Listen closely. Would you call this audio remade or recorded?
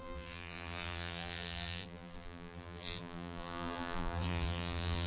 remade